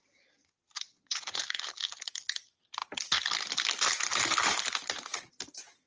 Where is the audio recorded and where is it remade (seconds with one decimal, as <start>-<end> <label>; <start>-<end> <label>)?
0.0-0.4 recorded; 0.4-1.4 remade; 1.4-5.9 recorded